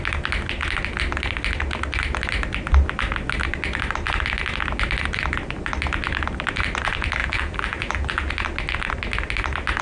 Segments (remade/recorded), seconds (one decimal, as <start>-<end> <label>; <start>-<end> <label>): 0.0-7.2 recorded; 7.2-8.3 remade; 8.3-9.8 recorded